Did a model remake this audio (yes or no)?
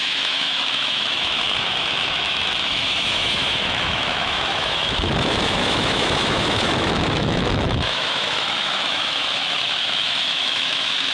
yes